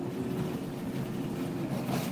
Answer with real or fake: real